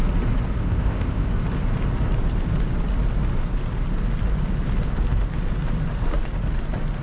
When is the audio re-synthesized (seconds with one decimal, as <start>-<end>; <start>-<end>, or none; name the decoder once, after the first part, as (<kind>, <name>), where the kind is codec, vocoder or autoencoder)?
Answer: 0.6-1.3 (codec, ZipCodec)